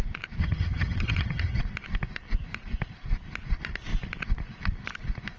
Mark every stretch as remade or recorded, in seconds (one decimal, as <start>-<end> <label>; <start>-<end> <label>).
0.0-0.4 recorded; 0.4-1.6 remade; 1.6-5.4 recorded

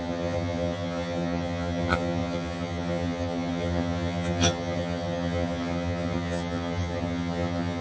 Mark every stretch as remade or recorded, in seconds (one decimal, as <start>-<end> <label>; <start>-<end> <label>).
0.0-7.8 remade

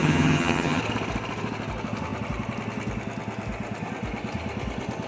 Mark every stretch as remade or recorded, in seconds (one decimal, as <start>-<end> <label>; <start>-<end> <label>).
0.0-0.8 remade; 0.8-5.1 recorded

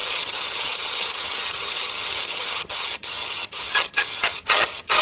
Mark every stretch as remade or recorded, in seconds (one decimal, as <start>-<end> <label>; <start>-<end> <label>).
0.0-5.0 remade

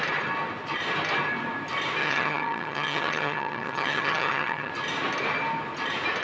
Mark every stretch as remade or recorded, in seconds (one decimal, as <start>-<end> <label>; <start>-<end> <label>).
0.0-2.0 recorded; 2.0-4.7 remade; 4.7-6.2 recorded

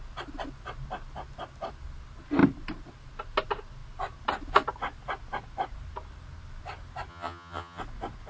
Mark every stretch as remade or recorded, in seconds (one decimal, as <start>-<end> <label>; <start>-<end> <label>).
0.0-7.1 recorded; 7.1-7.8 remade; 7.8-8.3 recorded

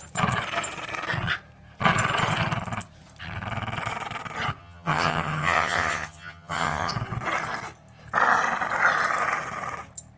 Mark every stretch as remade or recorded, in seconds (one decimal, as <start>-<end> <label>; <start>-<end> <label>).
0.0-4.6 recorded; 4.6-6.9 remade; 6.9-10.2 recorded

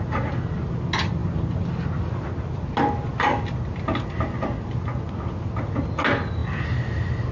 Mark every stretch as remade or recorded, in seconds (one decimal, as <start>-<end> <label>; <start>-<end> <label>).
0.0-7.3 recorded